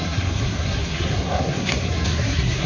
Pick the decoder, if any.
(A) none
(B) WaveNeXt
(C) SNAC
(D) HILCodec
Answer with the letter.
C